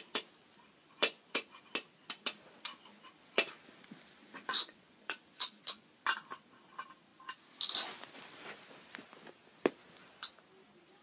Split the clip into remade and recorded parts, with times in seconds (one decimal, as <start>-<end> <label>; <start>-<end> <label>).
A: 0.0-0.8 recorded; 0.8-1.7 remade; 1.7-4.2 recorded; 4.2-5.9 remade; 5.9-11.0 recorded